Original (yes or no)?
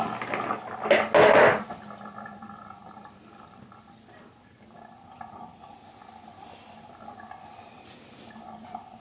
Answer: yes